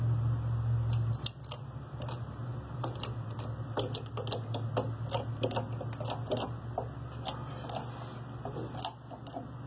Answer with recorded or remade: recorded